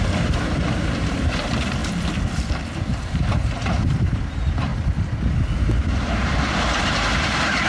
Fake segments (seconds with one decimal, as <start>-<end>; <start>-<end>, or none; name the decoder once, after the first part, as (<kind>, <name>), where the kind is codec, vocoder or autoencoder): 0.0-1.8 (vocoder, BigVGAN v2); 2.5-4.7; 5.8-7.7